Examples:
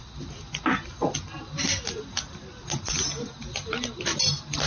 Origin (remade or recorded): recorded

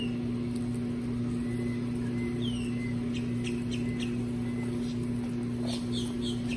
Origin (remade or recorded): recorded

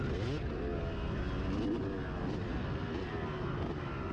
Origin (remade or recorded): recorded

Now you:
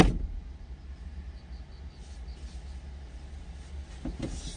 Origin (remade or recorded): recorded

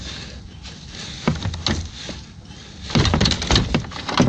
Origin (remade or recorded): recorded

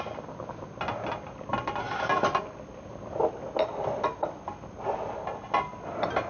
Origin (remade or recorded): recorded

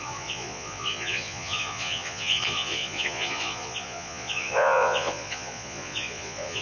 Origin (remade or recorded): remade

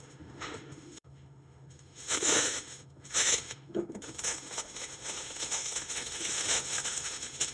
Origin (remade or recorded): remade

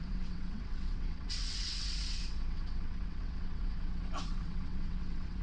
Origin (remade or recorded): remade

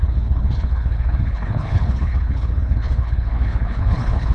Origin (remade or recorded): remade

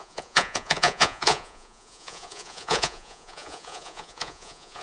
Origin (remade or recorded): remade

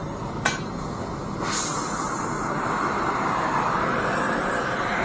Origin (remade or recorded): recorded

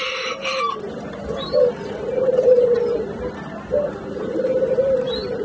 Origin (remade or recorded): remade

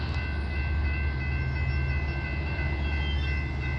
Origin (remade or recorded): recorded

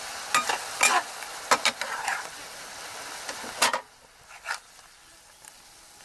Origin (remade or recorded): recorded